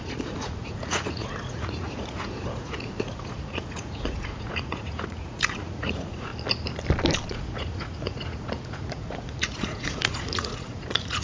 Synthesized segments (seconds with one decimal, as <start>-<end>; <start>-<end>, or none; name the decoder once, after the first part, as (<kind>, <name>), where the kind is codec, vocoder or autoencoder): 0.0-6.3 (vocoder, Vocos); 7.3-11.2